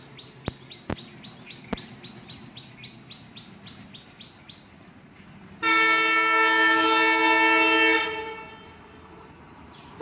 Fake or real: real